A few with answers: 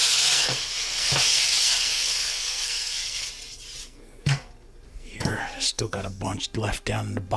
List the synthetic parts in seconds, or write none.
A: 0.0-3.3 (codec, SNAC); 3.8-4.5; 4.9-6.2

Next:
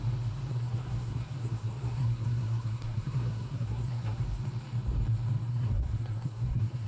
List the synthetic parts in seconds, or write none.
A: 0.5-4.2 (codec, SNAC); 5.5-6.9

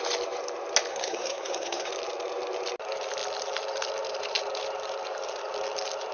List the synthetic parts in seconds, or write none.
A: 0.9-1.9 (codec, SNAC)